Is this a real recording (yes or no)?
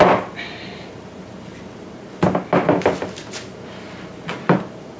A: yes